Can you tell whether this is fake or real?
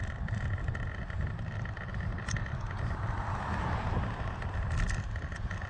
fake